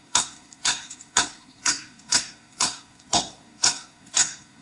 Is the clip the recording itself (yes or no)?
no